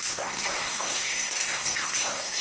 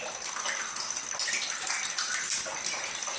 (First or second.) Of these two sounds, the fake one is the first